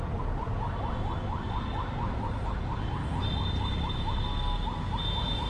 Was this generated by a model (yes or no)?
no